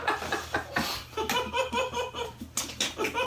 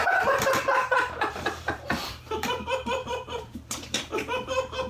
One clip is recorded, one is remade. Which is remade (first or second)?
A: second